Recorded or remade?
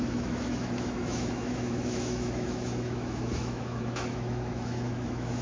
remade